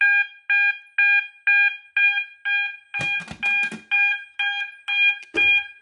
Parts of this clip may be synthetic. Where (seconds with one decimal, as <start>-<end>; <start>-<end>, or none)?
none